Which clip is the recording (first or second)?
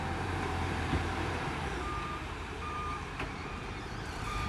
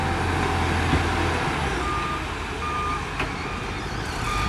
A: second